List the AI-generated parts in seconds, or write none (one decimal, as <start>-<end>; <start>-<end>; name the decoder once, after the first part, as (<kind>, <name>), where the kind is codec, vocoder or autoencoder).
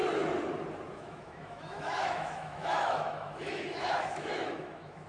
0.9-5.1 (autoencoder, DAC-VAE)